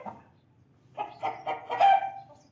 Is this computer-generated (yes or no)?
no